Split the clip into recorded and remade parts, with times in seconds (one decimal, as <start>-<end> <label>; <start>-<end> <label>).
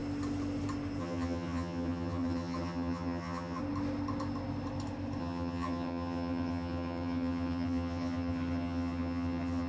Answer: 0.0-1.0 recorded; 1.0-3.6 remade; 3.6-5.2 recorded; 5.2-9.7 remade